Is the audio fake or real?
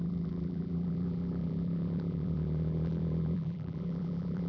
fake